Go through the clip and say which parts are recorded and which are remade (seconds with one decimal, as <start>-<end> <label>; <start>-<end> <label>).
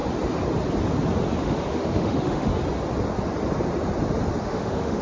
0.0-1.4 recorded; 1.4-2.5 remade; 2.5-4.4 recorded; 4.4-5.0 remade